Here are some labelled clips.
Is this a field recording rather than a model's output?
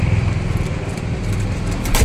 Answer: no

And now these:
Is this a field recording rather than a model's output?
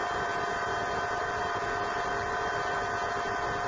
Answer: no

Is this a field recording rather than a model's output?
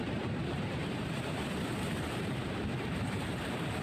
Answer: no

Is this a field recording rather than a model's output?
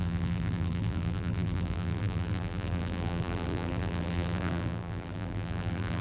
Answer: no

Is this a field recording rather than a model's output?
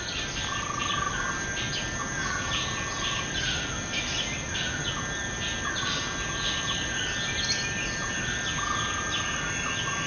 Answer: yes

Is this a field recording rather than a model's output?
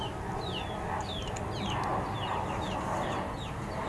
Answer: yes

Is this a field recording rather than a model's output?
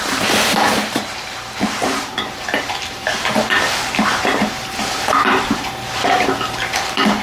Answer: no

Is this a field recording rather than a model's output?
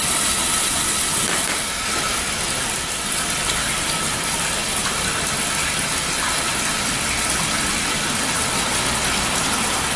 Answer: yes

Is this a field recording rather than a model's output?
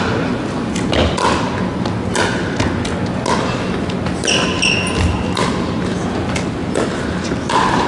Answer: yes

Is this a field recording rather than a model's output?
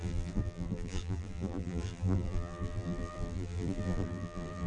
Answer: no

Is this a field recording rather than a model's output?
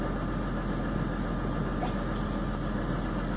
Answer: yes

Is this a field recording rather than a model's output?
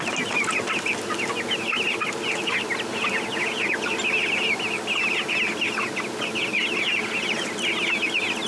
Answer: yes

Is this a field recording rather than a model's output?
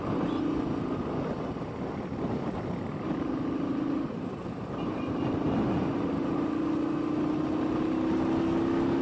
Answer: yes